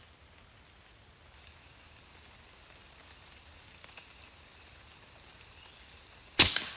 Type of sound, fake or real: real